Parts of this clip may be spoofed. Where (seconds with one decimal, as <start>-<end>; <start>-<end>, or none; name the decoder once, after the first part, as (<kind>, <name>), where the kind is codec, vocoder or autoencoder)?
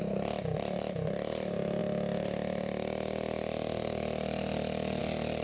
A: none